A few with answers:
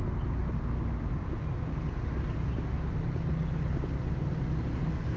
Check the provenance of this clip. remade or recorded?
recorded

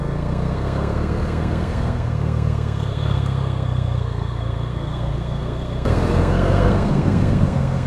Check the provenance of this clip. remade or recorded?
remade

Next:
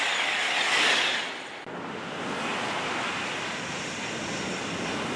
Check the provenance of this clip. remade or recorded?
recorded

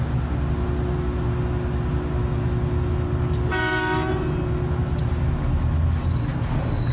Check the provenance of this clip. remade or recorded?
recorded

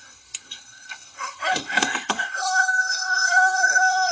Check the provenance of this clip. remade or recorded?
remade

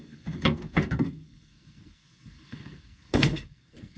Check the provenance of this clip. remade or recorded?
remade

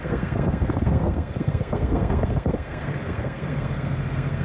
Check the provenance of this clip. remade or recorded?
remade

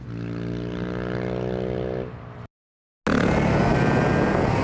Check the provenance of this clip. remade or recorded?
recorded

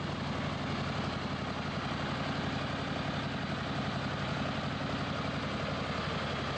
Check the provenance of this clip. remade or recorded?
recorded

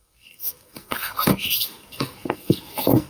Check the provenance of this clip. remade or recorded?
remade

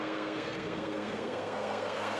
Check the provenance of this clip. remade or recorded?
remade